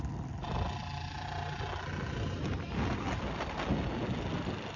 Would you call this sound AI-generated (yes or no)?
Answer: no